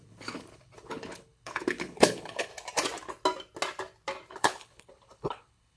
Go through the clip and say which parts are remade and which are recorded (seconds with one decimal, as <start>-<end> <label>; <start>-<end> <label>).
0.0-2.5 remade; 2.5-4.3 recorded; 4.3-5.8 remade

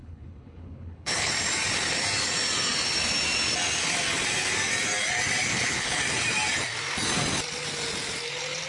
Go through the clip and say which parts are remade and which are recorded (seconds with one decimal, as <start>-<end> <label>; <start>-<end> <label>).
0.0-1.3 remade; 1.3-5.5 recorded; 5.5-6.0 remade; 6.0-8.7 recorded

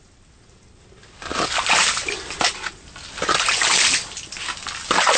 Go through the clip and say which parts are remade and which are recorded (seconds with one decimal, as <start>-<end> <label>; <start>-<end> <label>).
0.0-5.2 recorded

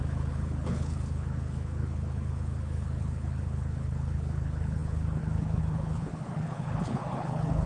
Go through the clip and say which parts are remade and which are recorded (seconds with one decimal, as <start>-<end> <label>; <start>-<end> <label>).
0.0-7.7 remade

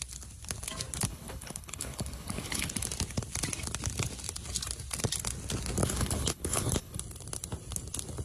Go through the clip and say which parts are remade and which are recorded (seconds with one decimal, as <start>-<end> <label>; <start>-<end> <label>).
0.0-1.1 recorded; 1.1-2.7 remade; 2.7-5.8 recorded; 5.8-7.0 remade; 7.0-8.2 recorded

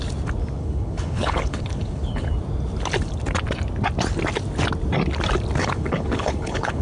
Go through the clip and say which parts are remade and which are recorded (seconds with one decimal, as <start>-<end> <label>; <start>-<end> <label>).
0.0-0.6 recorded; 0.6-2.3 remade; 2.3-5.6 recorded; 5.6-6.8 remade

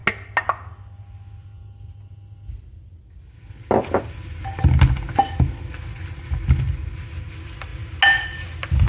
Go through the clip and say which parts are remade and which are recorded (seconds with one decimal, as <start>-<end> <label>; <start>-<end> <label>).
0.0-8.9 recorded